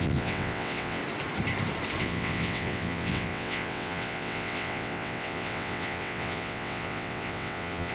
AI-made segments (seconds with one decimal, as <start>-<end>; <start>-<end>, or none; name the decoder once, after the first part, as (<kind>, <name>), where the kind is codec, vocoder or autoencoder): 0.0-1.0 (vocoder, WaveNeXt); 2.0-7.9